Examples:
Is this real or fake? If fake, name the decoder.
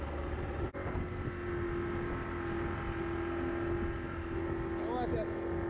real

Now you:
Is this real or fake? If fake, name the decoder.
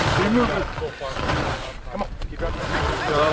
fake, vocoder, BigVGAN v2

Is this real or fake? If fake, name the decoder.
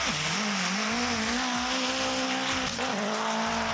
real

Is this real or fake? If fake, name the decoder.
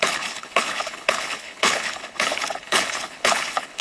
fake, codec, HILCodec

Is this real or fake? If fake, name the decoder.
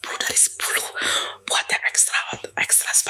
fake, autoencoder, DAC-VAE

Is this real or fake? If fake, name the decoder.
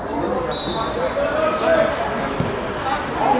real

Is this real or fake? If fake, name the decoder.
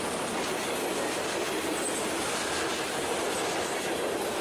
real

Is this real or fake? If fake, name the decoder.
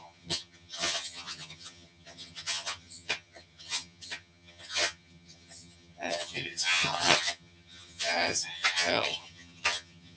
fake, vocoder, HiFi-GAN